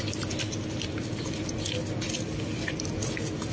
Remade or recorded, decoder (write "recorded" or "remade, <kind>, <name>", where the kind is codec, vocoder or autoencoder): recorded